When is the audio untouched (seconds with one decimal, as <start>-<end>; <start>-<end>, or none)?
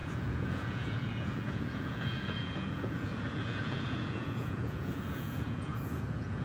none